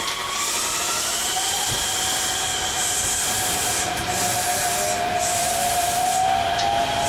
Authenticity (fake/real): real